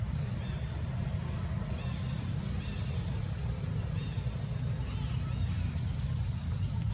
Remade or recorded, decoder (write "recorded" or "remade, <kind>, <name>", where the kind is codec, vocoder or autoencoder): recorded